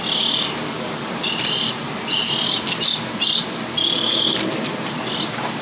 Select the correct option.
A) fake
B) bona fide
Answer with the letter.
B